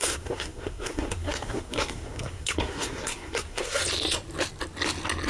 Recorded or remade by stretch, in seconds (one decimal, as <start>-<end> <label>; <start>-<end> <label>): 0.0-3.8 remade; 3.8-5.3 recorded

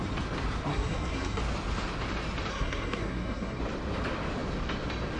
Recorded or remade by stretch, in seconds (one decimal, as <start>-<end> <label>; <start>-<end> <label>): 0.0-0.7 recorded; 0.7-1.4 remade; 1.4-2.5 recorded; 2.5-3.6 remade; 3.6-5.2 recorded

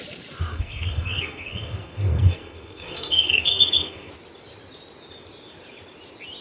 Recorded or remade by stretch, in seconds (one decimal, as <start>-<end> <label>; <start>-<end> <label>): 0.0-0.5 recorded; 0.5-4.1 remade; 4.1-6.4 recorded

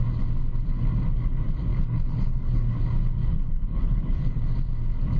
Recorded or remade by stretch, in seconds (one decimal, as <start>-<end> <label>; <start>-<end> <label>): 0.0-1.7 recorded; 1.7-2.8 remade; 2.8-3.2 recorded; 3.2-4.5 remade; 4.5-5.2 recorded

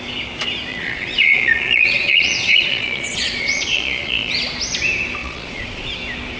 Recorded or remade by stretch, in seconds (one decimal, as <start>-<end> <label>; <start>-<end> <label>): 0.0-0.7 recorded; 0.7-4.3 remade; 4.3-5.2 recorded; 5.2-5.9 remade; 5.9-6.4 recorded